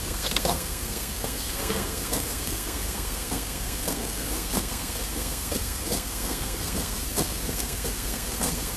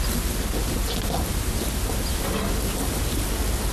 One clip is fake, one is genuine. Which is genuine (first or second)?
second